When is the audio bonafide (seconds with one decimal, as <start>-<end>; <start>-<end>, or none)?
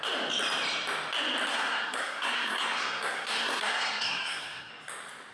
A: 0.0-1.5; 4.7-5.3